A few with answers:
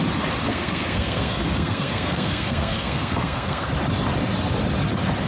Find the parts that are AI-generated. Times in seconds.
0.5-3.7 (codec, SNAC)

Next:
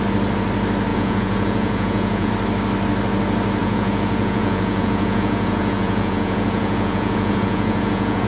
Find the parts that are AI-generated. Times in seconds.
0.9-2.3 (vocoder, Vocos); 3.6-8.3